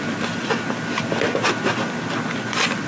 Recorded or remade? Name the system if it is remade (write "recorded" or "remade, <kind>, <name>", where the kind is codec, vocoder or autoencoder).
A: recorded